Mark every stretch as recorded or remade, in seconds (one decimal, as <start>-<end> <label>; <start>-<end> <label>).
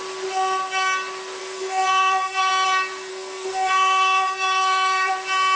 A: 0.0-1.4 recorded; 1.4-2.5 remade; 2.5-3.1 recorded; 3.1-5.1 remade; 5.1-5.6 recorded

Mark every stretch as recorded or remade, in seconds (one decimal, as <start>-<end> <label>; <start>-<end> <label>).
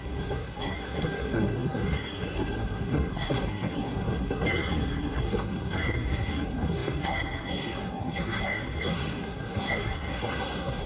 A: 0.0-10.9 remade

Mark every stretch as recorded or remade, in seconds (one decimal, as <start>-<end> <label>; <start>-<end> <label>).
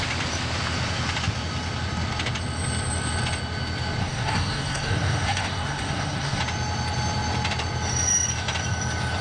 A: 0.0-4.0 recorded; 4.0-6.4 remade; 6.4-9.2 recorded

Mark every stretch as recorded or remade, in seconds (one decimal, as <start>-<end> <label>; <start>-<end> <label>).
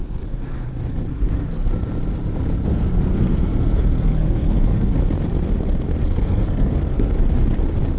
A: 0.0-0.7 remade; 0.7-1.1 recorded; 1.1-1.7 remade; 1.7-2.6 recorded; 2.6-5.0 remade; 5.0-6.0 recorded; 6.0-7.2 remade; 7.2-8.0 recorded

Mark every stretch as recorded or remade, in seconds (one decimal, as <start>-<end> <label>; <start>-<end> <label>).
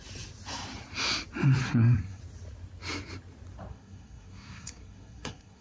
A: 0.0-1.6 recorded; 1.6-2.2 remade; 2.2-3.7 recorded; 3.7-5.6 remade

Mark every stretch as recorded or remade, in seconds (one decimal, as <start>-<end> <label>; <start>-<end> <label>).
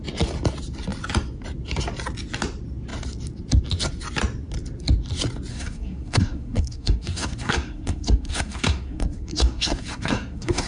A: 0.0-5.5 recorded; 5.5-10.7 remade